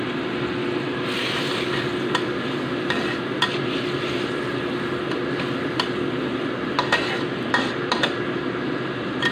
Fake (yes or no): no